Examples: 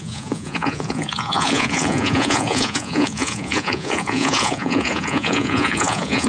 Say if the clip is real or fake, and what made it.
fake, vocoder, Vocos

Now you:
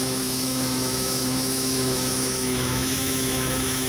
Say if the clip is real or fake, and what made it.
fake, autoencoder, DAC-VAE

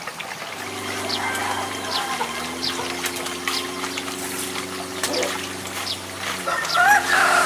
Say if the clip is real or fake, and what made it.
real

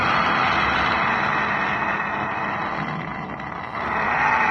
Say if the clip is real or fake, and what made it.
real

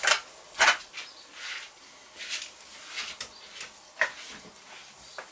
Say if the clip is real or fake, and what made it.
real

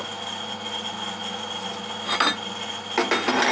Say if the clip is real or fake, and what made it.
real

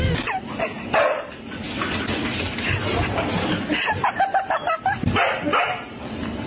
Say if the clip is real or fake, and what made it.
real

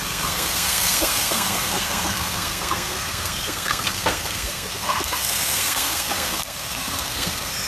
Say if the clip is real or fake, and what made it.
fake, codec, SNAC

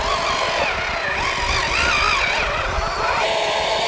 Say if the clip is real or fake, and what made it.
real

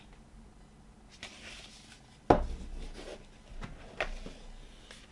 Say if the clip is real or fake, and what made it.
real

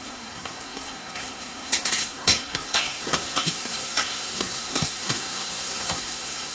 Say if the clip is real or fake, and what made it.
fake, codec, SNAC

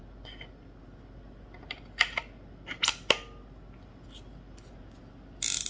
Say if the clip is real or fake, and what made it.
real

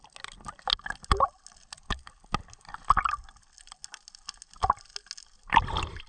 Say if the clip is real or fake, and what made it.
real